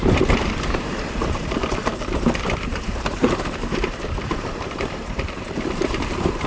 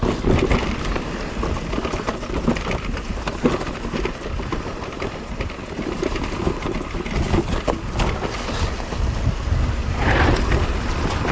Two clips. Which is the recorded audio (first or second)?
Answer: second